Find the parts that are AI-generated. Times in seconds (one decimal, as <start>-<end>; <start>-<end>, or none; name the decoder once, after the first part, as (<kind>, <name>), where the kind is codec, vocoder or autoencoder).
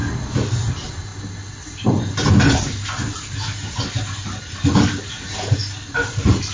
0.7-1.1 (vocoder, BigVGAN v2); 5.0-5.6; 6.1-6.5